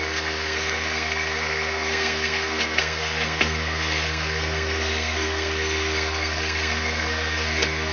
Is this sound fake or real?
fake